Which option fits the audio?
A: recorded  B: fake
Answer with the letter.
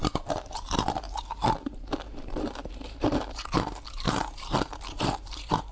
B